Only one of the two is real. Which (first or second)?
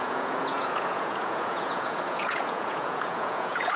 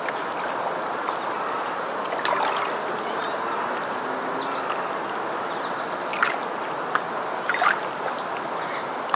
second